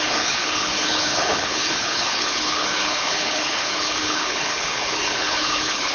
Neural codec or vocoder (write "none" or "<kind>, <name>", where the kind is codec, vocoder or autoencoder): codec, HILCodec